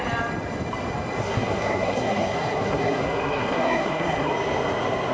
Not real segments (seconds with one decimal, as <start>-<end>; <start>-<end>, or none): 1.2-4.3